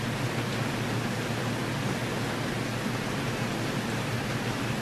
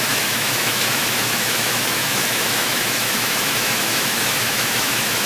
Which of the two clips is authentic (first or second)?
first